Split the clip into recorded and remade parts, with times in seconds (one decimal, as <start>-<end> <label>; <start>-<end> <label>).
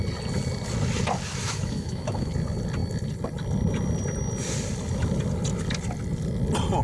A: 0.0-1.4 recorded; 1.4-2.3 remade; 2.3-6.8 recorded